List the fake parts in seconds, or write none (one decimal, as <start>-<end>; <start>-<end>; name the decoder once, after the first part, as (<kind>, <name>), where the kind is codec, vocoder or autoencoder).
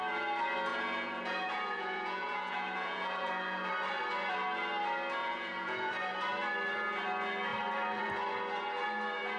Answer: 0.7-3.7 (vocoder, Vocos); 5.2-5.9